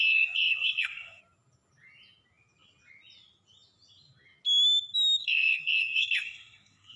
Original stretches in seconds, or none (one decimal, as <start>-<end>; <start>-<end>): 1.2-5.2

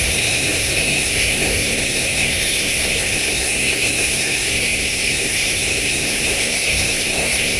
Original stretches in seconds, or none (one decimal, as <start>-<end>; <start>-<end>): none

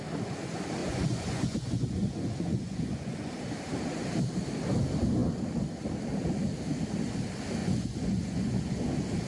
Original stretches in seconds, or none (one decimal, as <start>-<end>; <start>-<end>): 0.0-0.8; 3.3-7.6; 8.9-9.3